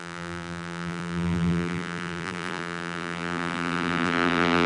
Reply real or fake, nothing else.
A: fake